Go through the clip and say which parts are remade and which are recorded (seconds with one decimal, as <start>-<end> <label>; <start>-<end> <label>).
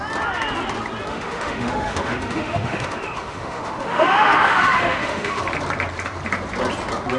0.0-1.1 recorded; 1.1-5.4 remade; 5.4-7.2 recorded